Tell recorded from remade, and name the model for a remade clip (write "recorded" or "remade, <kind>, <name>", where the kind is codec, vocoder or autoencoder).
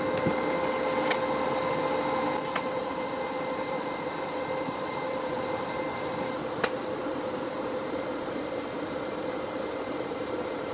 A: recorded